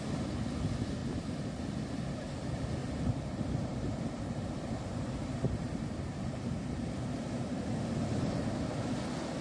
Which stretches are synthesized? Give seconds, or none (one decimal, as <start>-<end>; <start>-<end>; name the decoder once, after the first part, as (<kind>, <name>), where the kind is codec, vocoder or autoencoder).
1.0-1.8 (vocoder, BigVGAN v2); 2.8-7.6